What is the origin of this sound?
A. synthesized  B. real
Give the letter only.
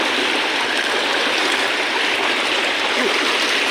B